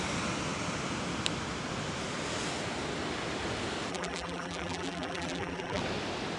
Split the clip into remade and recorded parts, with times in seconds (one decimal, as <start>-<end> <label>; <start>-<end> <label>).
0.0-3.9 recorded; 3.9-5.8 remade; 5.8-6.4 recorded